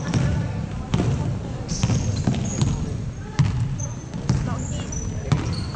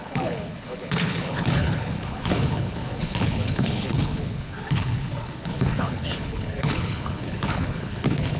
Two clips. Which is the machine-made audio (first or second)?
second